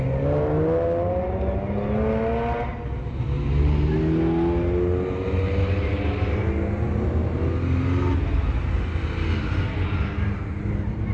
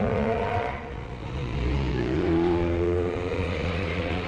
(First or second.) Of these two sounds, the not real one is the second